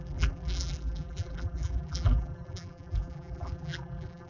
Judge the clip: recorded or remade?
remade